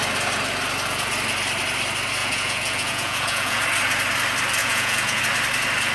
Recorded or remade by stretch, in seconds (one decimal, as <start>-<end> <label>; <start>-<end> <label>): 0.0-2.2 recorded; 2.2-3.6 remade; 3.6-4.6 recorded; 4.6-5.2 remade; 5.2-5.9 recorded